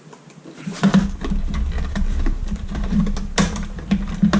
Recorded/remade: recorded